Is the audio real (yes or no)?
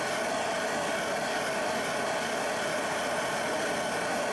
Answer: yes